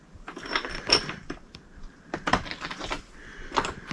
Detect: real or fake fake